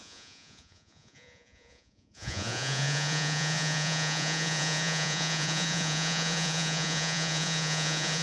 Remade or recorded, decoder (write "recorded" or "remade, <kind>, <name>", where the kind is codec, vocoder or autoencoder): remade, vocoder, Vocos